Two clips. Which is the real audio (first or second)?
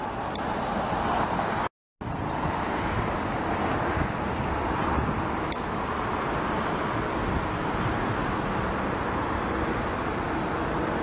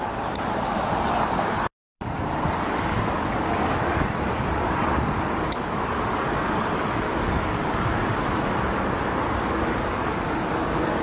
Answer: first